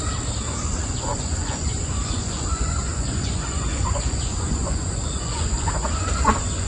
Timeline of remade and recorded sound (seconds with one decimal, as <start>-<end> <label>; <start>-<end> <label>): 0.0-0.6 recorded; 0.6-6.7 remade